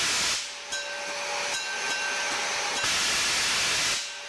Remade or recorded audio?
recorded